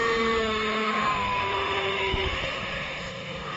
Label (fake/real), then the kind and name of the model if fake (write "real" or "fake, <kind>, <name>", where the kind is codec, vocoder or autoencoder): fake, autoencoder, DAC-VAE